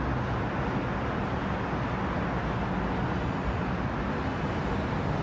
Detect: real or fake real